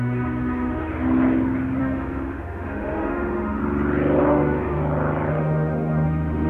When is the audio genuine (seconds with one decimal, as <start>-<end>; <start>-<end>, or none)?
0.9-1.8; 3.6-4.2; 4.8-5.3